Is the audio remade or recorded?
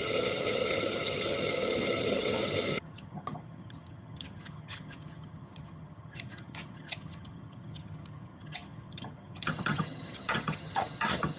remade